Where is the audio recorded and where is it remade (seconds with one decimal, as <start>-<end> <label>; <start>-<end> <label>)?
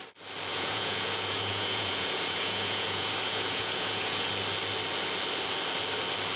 0.0-0.5 recorded; 0.5-4.3 remade; 4.3-6.4 recorded